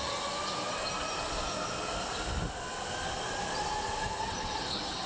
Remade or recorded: recorded